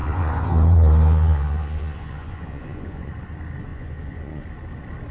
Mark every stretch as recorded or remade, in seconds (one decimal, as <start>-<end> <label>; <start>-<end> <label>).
0.0-3.1 remade; 3.1-3.7 recorded; 3.7-4.4 remade; 4.4-5.1 recorded